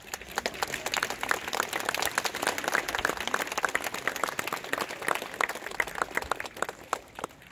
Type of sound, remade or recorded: recorded